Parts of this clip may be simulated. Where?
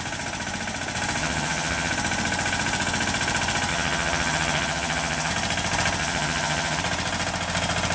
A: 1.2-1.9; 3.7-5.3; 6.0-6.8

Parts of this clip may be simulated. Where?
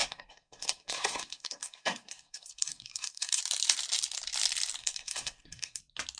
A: 0.0-3.4; 4.8-5.8